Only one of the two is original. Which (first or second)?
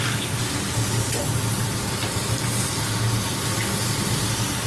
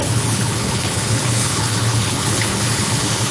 first